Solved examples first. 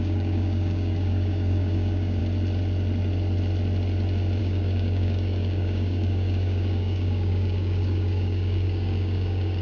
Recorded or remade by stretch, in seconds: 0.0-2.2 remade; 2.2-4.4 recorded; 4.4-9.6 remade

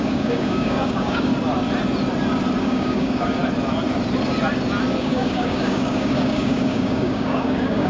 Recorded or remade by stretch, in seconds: 0.0-1.3 remade; 1.3-2.6 recorded; 2.6-3.4 remade; 3.4-5.0 recorded; 5.0-7.9 remade